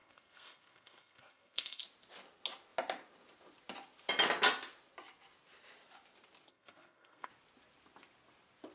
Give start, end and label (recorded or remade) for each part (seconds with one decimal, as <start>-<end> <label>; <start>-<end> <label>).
0.0-1.8 remade; 1.8-6.5 recorded; 6.5-7.3 remade; 7.3-8.7 recorded